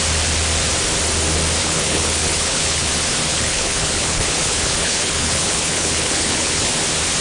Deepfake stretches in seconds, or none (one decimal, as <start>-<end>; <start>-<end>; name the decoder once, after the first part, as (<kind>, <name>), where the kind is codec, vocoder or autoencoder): 1.6-2.9 (codec, HILCodec); 3.3-6.7